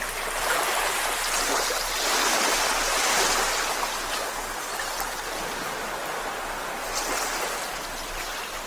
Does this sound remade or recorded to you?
recorded